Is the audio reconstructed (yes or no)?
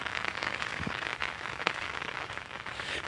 yes